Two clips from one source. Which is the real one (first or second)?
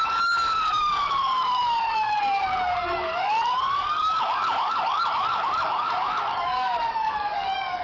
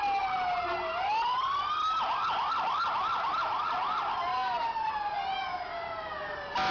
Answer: second